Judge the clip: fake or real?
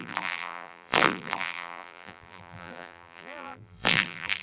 fake